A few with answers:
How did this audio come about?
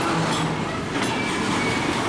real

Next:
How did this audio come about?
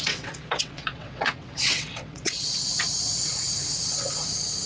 fake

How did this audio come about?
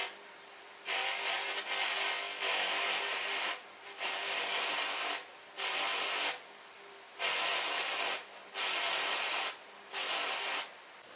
real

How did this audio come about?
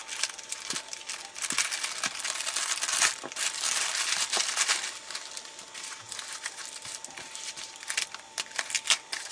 real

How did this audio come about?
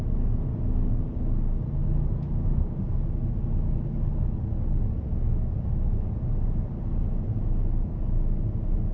real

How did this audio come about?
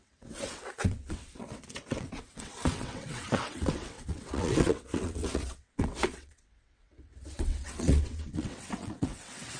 fake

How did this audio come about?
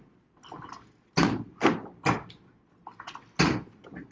real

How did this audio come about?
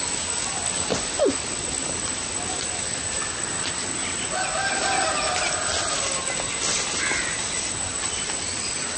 real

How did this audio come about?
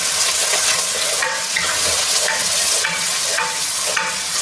fake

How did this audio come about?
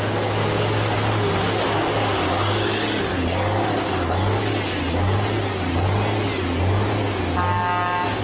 real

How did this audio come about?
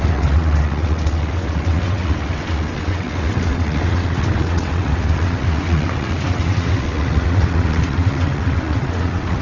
fake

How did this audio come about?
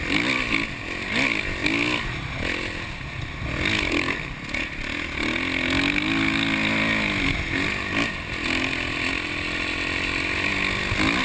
real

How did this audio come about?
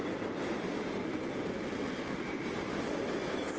real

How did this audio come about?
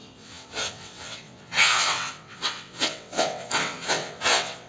fake